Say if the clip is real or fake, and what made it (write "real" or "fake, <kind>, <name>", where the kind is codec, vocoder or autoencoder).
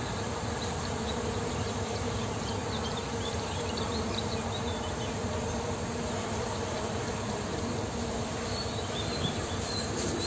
fake, vocoder, BigVGAN v2